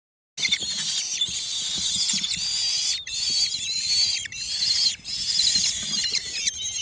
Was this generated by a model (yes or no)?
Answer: no